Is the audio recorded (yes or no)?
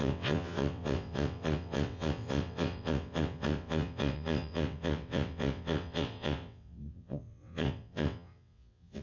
no